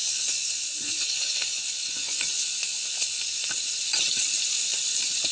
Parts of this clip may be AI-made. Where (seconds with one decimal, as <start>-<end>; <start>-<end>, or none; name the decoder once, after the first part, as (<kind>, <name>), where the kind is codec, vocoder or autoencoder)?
0.0-3.2 (vocoder, Vocos)